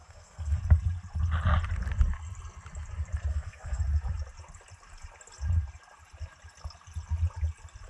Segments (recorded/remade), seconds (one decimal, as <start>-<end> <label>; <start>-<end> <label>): 0.0-0.6 remade; 0.6-3.3 recorded; 3.3-3.8 remade; 3.8-7.9 recorded